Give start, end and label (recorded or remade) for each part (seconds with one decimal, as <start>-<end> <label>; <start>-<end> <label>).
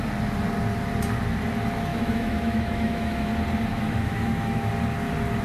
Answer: 0.0-1.9 recorded; 1.9-3.3 remade; 3.3-3.7 recorded; 3.7-4.7 remade; 4.7-5.4 recorded